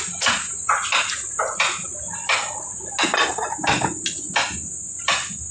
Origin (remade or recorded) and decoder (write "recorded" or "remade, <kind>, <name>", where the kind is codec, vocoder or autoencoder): recorded